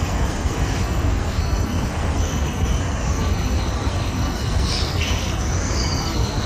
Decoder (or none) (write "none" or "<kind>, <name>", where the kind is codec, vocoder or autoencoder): codec, SNAC